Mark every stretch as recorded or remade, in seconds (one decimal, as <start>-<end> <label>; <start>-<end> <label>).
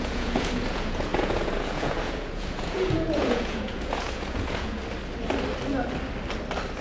0.0-4.8 remade; 4.8-6.8 recorded